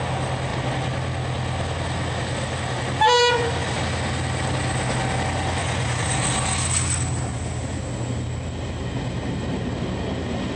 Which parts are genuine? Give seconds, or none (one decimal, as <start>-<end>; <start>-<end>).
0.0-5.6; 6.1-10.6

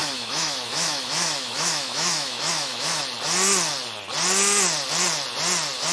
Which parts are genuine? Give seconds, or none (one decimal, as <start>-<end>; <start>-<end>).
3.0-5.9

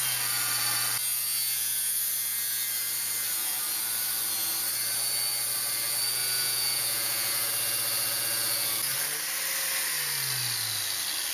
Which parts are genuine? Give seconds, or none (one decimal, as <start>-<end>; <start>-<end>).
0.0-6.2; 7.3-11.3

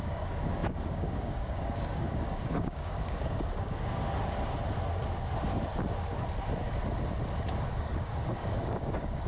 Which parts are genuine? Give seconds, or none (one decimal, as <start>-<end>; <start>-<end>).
4.0-7.8

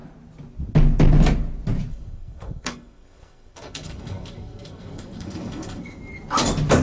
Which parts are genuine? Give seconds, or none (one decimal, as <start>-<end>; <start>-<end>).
0.0-1.9; 6.0-6.8

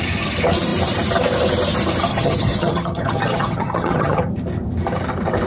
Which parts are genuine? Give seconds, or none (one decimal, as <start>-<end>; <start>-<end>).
0.0-2.1; 4.2-5.5